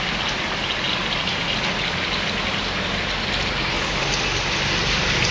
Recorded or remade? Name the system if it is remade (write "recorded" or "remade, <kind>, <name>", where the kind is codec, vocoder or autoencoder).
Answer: recorded